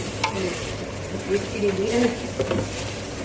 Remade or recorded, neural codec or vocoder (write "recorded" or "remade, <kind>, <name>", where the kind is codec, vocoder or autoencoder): remade, vocoder, BigVGAN v2